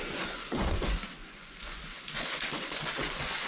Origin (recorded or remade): remade